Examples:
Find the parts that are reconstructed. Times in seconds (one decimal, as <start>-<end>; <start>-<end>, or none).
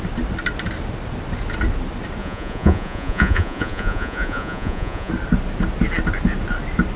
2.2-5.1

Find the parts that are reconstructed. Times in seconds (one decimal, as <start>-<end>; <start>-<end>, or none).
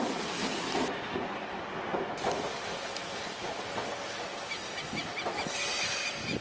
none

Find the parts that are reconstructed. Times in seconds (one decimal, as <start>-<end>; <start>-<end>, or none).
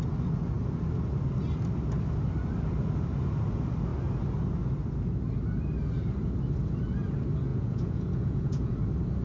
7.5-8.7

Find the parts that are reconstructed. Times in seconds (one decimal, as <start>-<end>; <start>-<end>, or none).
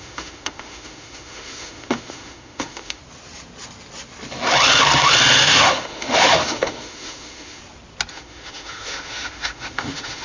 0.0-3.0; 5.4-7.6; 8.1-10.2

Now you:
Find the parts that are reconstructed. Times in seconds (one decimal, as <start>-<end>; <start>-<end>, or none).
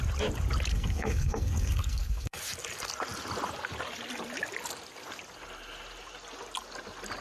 0.7-2.4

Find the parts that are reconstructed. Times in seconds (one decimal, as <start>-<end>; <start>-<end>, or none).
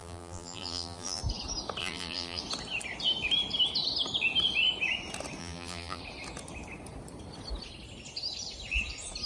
0.0-1.2; 1.8-2.4; 5.4-6.0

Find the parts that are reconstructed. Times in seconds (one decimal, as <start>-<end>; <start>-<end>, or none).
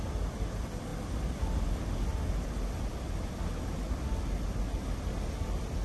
none